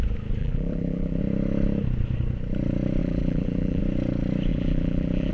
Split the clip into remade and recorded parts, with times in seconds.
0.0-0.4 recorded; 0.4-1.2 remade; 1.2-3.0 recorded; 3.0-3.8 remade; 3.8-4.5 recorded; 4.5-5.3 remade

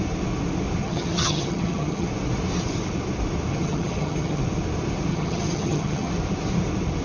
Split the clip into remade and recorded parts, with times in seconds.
0.0-0.8 recorded; 0.8-2.1 remade; 2.1-3.5 recorded; 3.5-4.4 remade; 4.4-5.1 recorded; 5.1-6.1 remade; 6.1-7.0 recorded

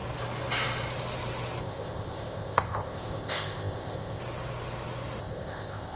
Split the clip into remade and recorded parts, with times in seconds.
0.0-1.6 recorded; 1.6-4.2 remade; 4.2-5.2 recorded; 5.2-6.0 remade

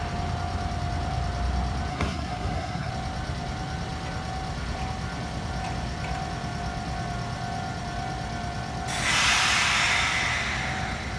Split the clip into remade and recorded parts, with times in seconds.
0.0-1.9 recorded; 1.9-2.9 remade; 2.9-11.2 recorded

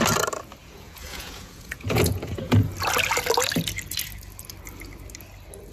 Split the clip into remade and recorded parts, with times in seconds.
0.0-0.6 recorded; 0.6-2.6 remade; 2.6-5.7 recorded

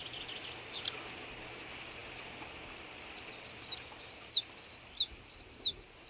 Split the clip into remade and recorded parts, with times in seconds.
0.0-6.1 recorded

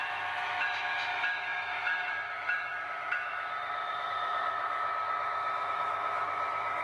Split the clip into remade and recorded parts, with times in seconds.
0.0-6.8 remade